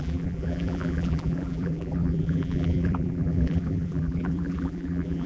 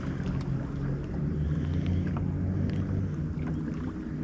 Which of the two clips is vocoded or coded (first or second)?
first